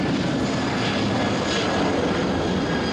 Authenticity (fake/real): real